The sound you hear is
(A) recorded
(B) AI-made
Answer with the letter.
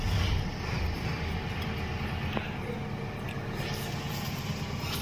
A